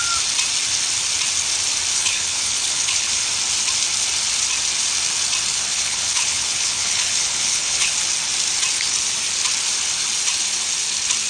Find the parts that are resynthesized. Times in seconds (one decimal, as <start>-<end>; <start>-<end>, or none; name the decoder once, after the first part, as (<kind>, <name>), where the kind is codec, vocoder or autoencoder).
1.9-3.3 (codec, HILCodec); 5.7-7.9